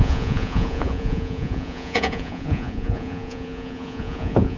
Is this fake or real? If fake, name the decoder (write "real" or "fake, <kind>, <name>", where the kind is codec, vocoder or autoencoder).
fake, vocoder, Vocos